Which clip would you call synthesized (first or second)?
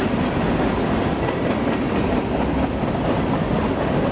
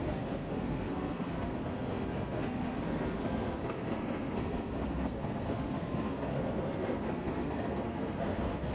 second